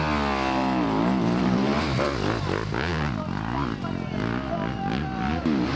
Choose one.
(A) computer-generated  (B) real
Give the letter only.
B